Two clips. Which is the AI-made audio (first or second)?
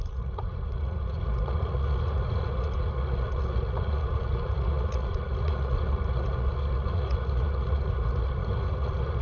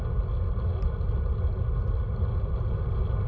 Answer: first